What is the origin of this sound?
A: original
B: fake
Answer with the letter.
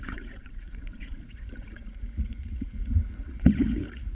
B